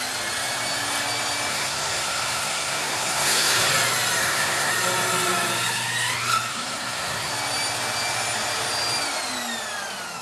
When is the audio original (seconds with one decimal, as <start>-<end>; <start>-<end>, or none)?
0.0-1.5; 3.7-4.2; 4.7-6.5; 7.3-10.2